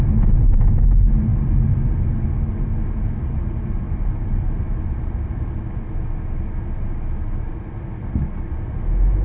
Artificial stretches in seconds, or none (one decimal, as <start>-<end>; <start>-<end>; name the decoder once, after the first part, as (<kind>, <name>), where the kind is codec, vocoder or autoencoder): none